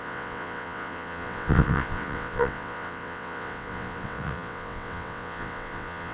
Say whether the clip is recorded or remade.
remade